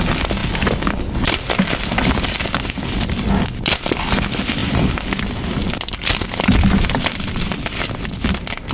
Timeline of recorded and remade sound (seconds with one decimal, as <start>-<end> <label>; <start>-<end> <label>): 0.0-8.7 recorded